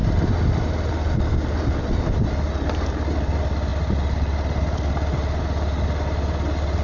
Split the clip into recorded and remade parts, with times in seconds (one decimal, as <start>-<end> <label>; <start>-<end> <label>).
0.0-6.8 recorded